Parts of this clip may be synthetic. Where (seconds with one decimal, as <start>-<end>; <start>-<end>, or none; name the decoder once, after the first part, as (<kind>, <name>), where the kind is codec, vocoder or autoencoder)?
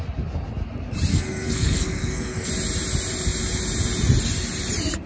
1.1-2.5 (codec, SNAC)